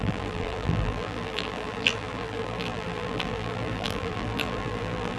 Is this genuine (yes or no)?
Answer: no